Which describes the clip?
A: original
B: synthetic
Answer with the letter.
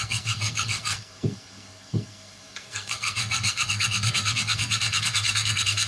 B